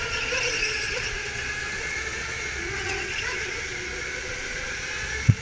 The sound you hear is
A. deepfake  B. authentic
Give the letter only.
A